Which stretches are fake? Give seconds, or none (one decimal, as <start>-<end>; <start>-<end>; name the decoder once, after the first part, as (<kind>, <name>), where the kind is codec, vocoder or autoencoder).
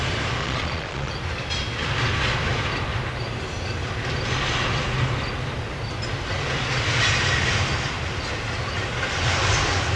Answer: 0.4-1.1 (vocoder, Vocos)